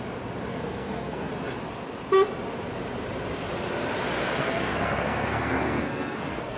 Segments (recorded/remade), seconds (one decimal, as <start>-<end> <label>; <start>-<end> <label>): 0.0-0.5 recorded; 0.5-1.3 remade; 1.3-4.4 recorded; 4.4-6.6 remade